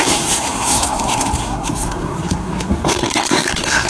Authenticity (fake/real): fake